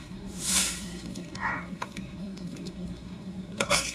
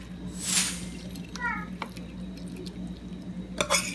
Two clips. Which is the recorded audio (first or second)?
second